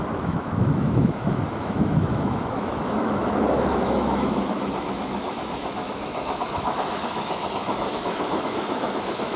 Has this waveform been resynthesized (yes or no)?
yes